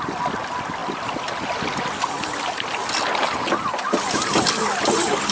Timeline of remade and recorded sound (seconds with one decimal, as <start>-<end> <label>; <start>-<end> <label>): 0.0-5.3 recorded